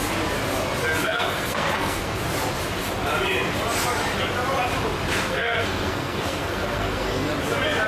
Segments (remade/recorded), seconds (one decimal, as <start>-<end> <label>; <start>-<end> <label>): 0.0-1.0 recorded; 1.0-2.2 remade; 2.2-5.1 recorded; 5.1-7.3 remade; 7.3-7.9 recorded